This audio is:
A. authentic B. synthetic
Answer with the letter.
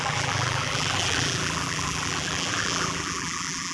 B